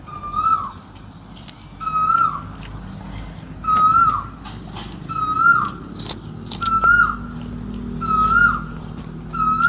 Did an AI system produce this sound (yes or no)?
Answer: no